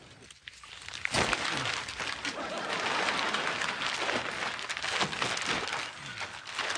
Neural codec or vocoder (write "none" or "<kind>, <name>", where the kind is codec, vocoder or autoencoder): none